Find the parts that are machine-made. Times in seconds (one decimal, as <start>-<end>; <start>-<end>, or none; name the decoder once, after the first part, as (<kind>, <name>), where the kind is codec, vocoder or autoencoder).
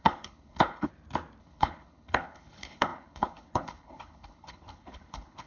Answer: 0.0-0.9 (codec, HILCodec); 1.4-5.5